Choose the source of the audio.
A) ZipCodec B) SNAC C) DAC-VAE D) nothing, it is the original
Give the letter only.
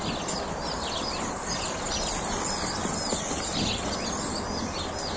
D